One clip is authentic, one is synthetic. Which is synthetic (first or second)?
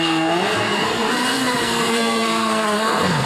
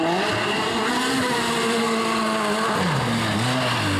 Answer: first